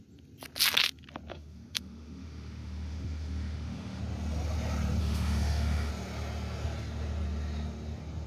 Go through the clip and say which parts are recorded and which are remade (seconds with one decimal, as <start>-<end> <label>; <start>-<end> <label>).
0.0-1.3 recorded; 1.3-4.0 remade; 4.0-5.0 recorded; 5.0-5.9 remade; 5.9-8.3 recorded